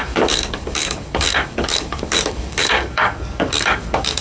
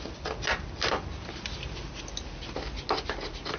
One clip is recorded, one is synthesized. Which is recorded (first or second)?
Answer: second